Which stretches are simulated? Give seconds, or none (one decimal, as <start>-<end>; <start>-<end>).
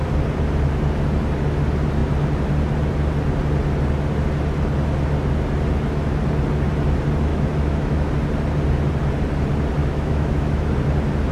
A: 7.3-8.1; 9.8-10.7